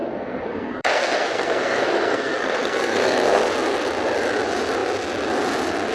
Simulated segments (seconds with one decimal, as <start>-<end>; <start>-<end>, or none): 0.0-3.5